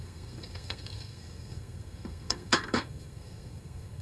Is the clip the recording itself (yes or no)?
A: no